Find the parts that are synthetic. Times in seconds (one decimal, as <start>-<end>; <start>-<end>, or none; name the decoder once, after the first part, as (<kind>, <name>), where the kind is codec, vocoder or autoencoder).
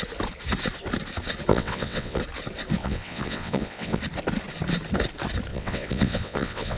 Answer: 1.5-2.2 (vocoder, WaveNeXt); 2.8-4.0; 5.5-6.8